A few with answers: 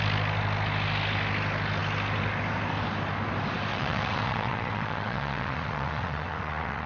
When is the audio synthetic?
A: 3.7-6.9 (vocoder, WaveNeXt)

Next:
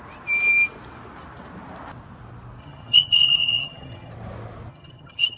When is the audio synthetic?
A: 2.6-4.1 (vocoder, HiFi-GAN); 4.7-5.4